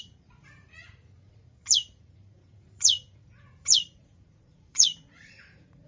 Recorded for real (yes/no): no